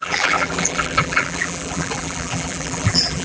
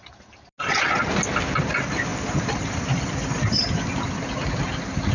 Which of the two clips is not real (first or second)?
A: first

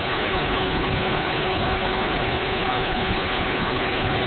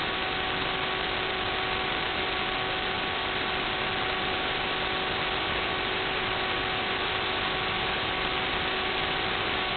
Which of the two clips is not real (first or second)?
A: first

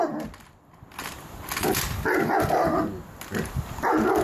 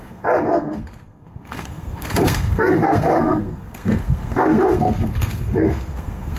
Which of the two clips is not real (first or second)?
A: second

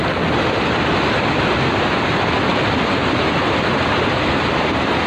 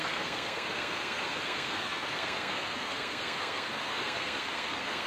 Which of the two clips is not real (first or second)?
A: second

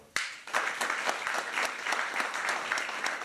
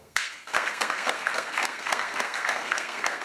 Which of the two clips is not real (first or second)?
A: second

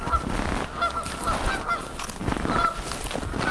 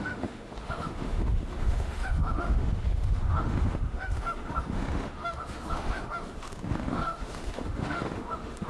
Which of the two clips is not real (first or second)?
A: second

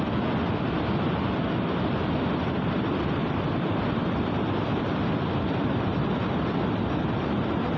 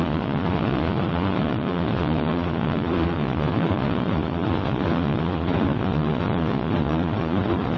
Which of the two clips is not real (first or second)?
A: second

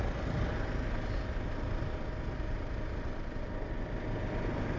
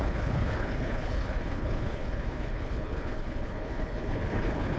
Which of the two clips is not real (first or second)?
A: second